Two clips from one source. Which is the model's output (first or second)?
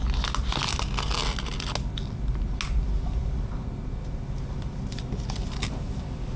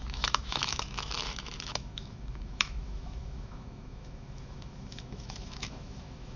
second